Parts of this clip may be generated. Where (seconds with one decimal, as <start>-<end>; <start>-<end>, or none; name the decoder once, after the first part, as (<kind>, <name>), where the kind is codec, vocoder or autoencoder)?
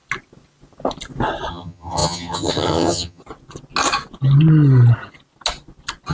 1.5-3.2 (vocoder, HiFi-GAN)